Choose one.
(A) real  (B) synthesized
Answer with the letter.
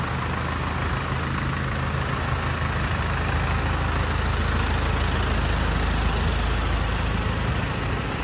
A